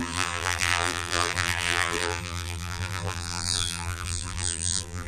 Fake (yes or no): yes